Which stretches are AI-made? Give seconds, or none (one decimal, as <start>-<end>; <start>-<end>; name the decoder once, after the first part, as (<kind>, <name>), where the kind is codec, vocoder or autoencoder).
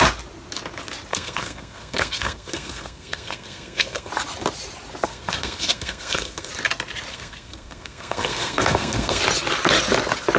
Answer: 1.1-4.1 (codec, SNAC); 5.0-6.5; 7.1-9.2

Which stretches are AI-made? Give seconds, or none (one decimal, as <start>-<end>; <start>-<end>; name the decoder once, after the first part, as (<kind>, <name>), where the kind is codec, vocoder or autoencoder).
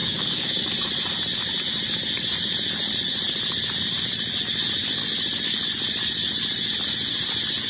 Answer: 0.0-0.6 (codec, DAC)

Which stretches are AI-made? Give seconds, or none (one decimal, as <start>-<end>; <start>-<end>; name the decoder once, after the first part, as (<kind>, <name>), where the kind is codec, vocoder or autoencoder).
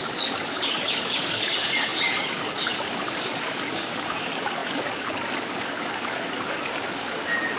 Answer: 0.0-7.6 (codec, DAC)